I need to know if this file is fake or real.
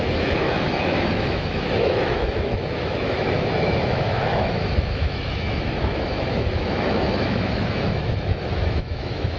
fake